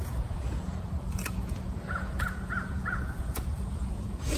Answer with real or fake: fake